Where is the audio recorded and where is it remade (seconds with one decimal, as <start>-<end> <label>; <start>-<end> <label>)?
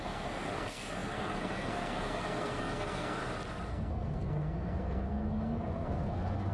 0.0-3.2 remade; 3.2-3.7 recorded; 3.7-6.5 remade